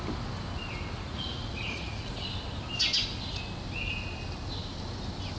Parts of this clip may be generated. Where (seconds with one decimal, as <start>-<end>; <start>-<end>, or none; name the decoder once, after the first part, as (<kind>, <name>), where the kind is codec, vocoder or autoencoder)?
1.1-2.1 (vocoder, Vocos)

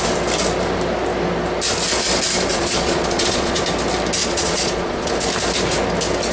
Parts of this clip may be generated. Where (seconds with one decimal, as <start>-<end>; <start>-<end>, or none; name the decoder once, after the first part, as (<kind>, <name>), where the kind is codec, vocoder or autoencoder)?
2.5-3.6 (vocoder, Vocos); 4.2-5.1

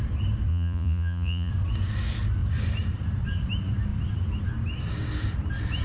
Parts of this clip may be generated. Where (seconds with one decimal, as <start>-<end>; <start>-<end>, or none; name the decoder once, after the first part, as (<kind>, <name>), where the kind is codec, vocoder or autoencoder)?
0.5-1.5 (vocoder, Vocos)